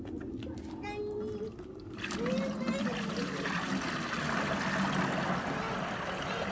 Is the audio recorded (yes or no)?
yes